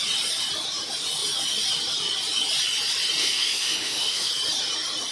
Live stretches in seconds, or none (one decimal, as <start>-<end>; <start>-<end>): 0.0-3.2; 4.3-5.1

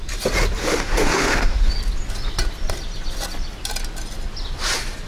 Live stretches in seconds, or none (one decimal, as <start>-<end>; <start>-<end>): 0.0-0.6; 1.7-5.1

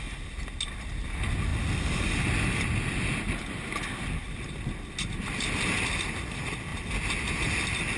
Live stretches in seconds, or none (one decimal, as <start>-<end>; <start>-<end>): 0.0-8.0

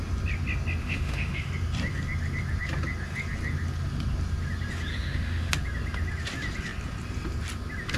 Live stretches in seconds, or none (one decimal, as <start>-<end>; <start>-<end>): 0.0-0.8; 1.5-4.9; 5.5-8.0